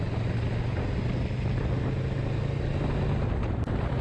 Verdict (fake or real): real